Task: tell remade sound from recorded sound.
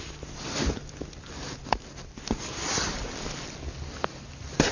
recorded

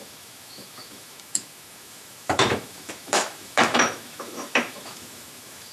remade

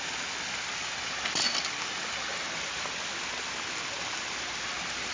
recorded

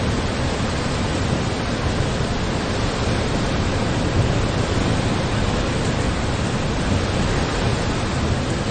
recorded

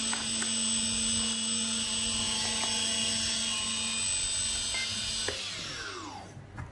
recorded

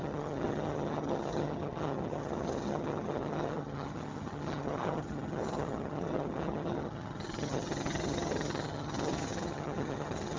remade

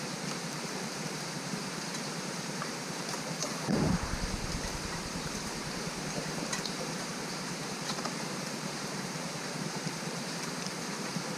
remade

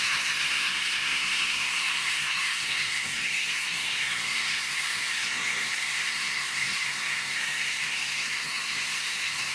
remade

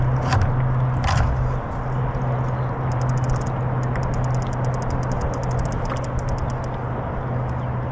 recorded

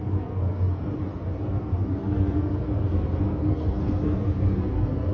remade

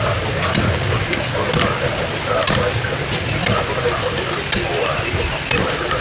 recorded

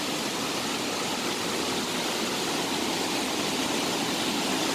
recorded